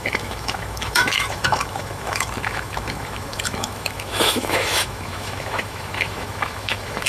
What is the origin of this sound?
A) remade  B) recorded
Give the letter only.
A